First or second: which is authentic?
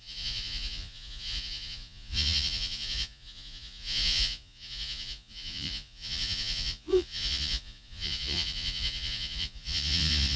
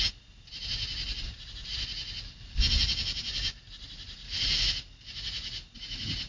second